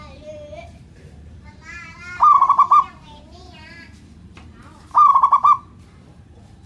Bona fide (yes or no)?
no